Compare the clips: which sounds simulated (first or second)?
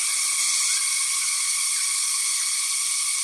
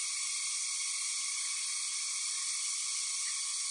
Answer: second